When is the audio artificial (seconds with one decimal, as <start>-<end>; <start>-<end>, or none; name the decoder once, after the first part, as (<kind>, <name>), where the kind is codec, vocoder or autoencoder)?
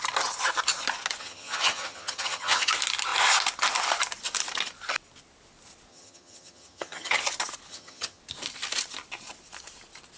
1.2-2.7 (vocoder, HiFi-GAN); 5.9-7.2; 7.7-8.2